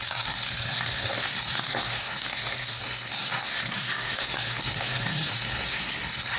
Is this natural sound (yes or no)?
no